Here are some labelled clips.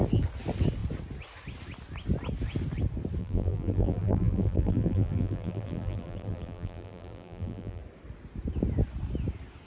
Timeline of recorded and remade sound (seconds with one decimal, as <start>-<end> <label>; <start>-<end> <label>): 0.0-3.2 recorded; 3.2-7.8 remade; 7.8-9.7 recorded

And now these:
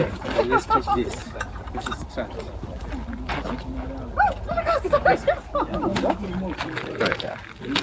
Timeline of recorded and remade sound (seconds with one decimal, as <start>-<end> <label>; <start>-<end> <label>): 0.0-1.2 recorded; 1.2-2.8 remade; 2.8-7.8 recorded

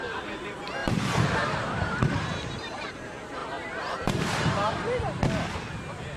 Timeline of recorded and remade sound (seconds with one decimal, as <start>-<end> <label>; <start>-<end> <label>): 0.0-0.8 recorded; 0.8-2.9 remade; 2.9-3.4 recorded; 3.4-5.2 remade; 5.2-6.2 recorded